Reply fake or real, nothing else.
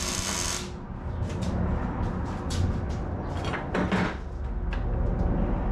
real